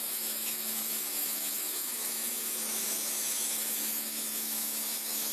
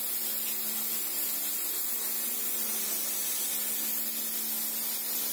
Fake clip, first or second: first